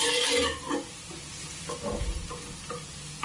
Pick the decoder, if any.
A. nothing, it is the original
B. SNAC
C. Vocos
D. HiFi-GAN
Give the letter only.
A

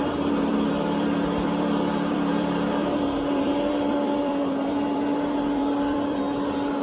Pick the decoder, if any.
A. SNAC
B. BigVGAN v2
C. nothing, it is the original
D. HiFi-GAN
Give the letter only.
B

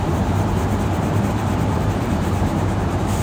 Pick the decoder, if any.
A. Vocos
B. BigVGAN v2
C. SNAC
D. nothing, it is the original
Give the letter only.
B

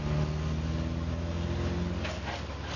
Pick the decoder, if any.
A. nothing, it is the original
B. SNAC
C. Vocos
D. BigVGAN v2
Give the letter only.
A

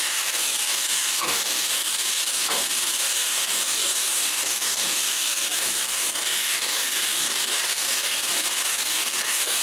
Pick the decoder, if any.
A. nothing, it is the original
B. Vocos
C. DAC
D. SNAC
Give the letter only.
C